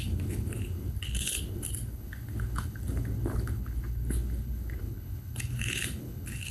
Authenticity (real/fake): fake